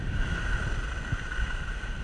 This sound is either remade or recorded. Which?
recorded